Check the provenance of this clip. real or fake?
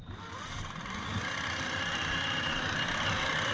real